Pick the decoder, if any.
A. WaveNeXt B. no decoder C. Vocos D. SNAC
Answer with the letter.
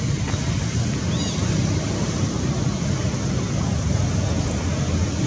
B